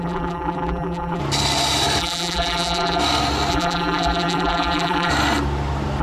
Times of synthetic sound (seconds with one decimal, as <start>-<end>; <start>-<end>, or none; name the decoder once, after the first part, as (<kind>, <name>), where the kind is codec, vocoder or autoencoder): 0.0-1.2 (vocoder, BigVGAN v2); 2.0-3.0; 3.5-5.1